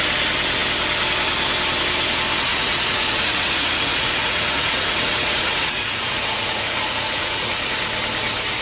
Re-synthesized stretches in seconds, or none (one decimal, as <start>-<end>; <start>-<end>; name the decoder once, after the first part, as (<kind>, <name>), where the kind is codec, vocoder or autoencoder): 2.5-7.7 (vocoder, Vocos)